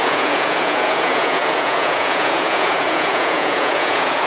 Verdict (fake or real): fake